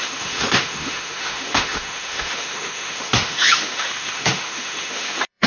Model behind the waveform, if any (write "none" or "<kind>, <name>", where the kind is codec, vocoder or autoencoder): autoencoder, DAC-VAE